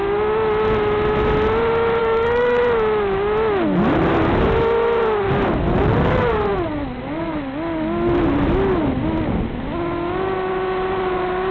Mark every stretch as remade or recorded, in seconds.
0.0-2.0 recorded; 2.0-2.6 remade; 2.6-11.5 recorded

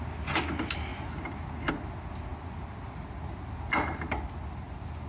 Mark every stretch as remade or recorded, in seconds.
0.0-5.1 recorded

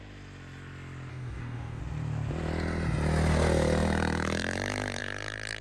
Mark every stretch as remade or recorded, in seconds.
0.0-1.1 recorded; 1.1-1.8 remade; 1.8-5.6 recorded